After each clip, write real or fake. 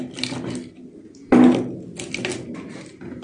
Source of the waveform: real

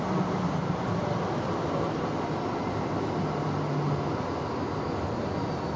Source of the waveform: real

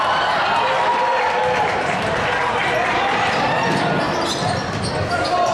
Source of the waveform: fake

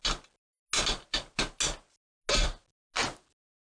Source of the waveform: real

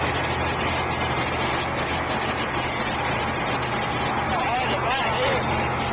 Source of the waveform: real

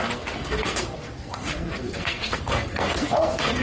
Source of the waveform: fake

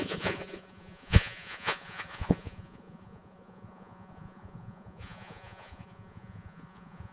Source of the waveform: fake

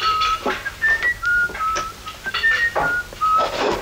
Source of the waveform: real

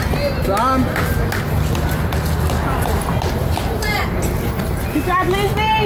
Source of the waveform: real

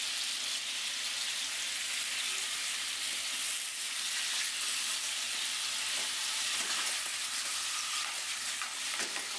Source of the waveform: real